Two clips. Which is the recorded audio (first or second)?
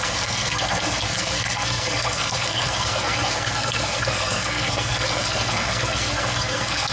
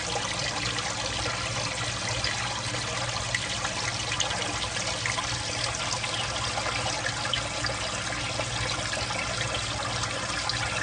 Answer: second